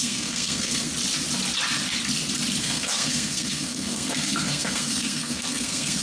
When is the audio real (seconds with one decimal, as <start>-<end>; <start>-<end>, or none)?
0.9-2.6